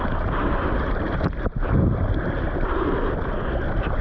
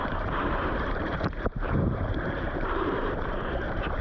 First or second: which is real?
first